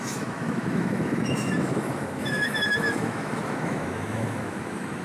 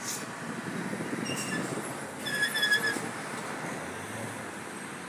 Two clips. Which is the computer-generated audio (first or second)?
first